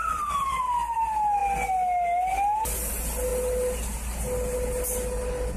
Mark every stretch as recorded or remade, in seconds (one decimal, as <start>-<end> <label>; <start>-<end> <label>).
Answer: 0.0-0.6 remade; 0.6-5.6 recorded